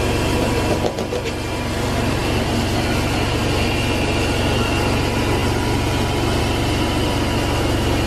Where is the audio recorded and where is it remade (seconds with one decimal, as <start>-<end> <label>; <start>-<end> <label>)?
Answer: 0.0-8.1 recorded